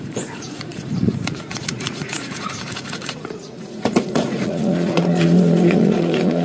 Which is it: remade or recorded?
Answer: remade